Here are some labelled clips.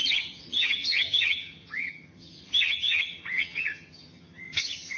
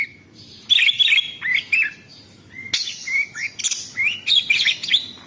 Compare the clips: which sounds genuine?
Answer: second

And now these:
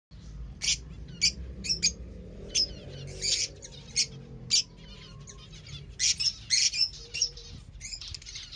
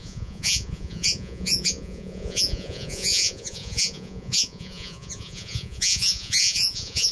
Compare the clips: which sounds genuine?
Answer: first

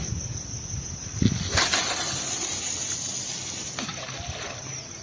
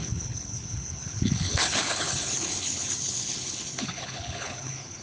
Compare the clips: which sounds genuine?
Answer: first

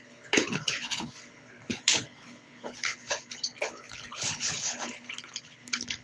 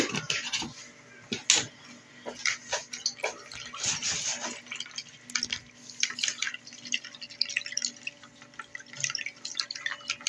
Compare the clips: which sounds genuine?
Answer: second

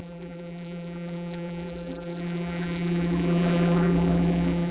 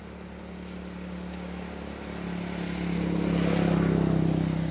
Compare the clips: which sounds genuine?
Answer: second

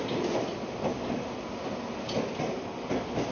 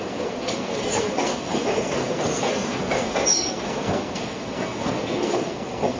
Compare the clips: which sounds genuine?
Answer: first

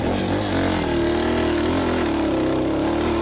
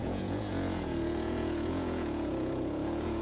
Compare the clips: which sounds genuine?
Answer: first